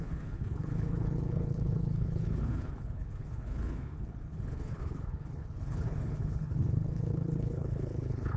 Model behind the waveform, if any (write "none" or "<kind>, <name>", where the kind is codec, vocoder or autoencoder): codec, HILCodec